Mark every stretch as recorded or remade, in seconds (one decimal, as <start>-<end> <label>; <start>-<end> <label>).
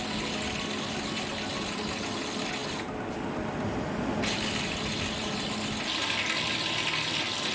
0.0-7.5 recorded